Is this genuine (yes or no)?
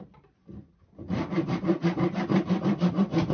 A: yes